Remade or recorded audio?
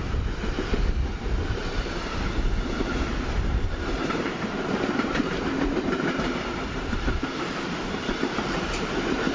remade